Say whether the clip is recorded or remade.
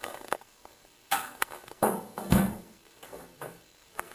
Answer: remade